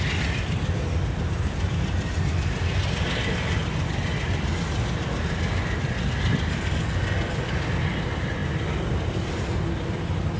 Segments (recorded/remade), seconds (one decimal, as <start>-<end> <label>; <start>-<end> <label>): 0.0-10.4 recorded